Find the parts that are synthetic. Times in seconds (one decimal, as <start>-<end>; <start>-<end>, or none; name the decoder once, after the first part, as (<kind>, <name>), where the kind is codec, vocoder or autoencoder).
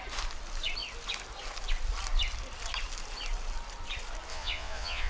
4.3-5.1 (vocoder, Vocos)